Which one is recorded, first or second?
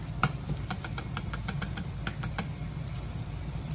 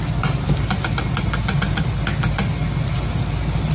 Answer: second